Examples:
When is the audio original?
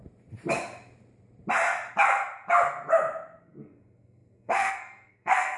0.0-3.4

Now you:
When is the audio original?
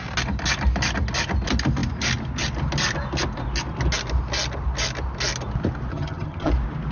0.0-5.9; 6.5-6.9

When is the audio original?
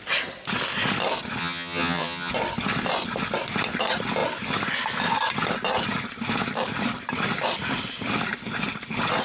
0.0-1.4; 2.3-9.2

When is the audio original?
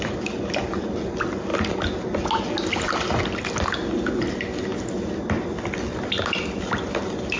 0.0-7.4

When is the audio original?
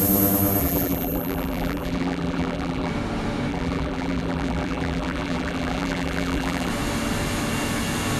0.0-0.6; 2.9-3.5; 6.7-8.2